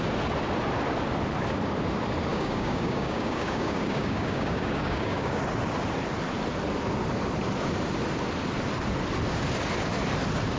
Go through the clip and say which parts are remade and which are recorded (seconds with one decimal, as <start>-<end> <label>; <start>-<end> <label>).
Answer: 0.0-2.3 recorded; 2.3-5.4 remade; 5.4-10.6 recorded